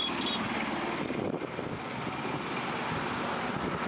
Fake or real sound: real